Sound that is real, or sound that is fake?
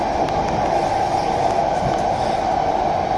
real